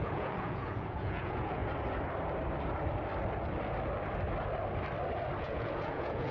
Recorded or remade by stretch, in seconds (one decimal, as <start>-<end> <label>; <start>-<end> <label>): 0.0-1.6 remade; 1.6-5.4 recorded; 5.4-6.3 remade